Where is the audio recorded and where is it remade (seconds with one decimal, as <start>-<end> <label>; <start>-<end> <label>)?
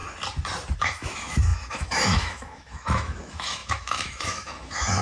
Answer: 0.0-0.8 recorded; 0.8-5.0 remade